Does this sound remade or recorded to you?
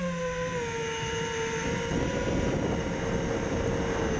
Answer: recorded